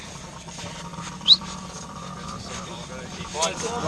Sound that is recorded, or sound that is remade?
remade